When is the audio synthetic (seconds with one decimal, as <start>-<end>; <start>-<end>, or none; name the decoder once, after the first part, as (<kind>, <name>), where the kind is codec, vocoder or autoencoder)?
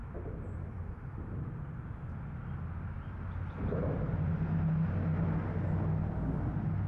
none